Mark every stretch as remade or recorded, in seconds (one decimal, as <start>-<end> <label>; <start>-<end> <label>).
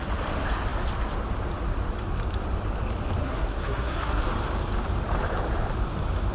0.0-3.2 recorded; 3.2-4.2 remade; 4.2-6.3 recorded